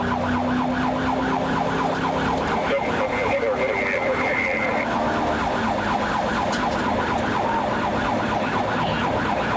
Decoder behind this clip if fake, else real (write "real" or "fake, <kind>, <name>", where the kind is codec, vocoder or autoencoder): real